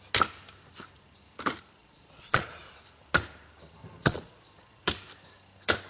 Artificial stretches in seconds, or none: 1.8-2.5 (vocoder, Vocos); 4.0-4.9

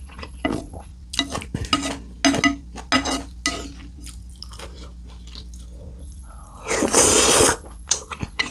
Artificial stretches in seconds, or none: 0.0-0.9 (vocoder, Vocos); 6.0-8.5

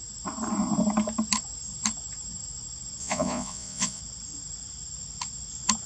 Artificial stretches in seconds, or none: 3.0-4.0 (vocoder, Vocos)

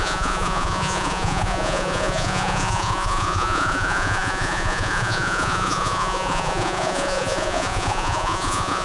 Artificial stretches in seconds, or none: 0.0-8.8 (vocoder, Vocos)